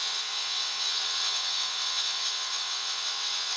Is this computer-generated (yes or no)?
yes